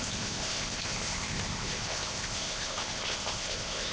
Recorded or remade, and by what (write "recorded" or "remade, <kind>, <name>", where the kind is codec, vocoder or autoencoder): remade, codec, ZipCodec